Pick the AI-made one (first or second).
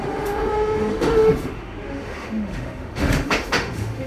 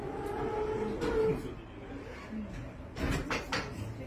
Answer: first